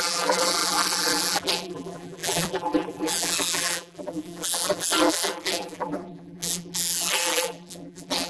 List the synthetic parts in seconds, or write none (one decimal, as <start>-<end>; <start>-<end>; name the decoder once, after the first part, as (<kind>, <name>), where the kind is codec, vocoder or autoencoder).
0.0-8.3 (vocoder, BigVGAN v2)